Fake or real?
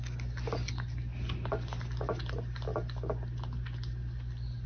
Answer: real